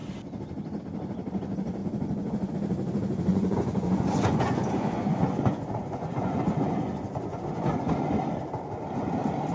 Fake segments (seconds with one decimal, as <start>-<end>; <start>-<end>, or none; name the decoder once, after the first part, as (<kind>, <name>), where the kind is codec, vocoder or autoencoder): 1.8-2.5 (vocoder, Vocos); 3.3-7.7